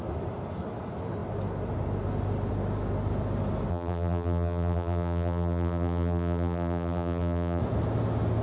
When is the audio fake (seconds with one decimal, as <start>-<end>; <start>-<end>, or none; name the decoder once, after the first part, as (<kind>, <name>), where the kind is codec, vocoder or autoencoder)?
3.7-7.6 (vocoder, BigVGAN v2)